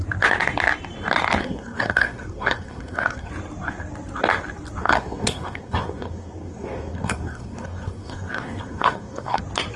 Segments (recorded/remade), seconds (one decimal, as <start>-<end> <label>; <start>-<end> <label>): 0.0-1.4 recorded; 1.4-3.3 remade; 3.3-4.8 recorded; 4.8-9.4 remade; 9.4-9.8 recorded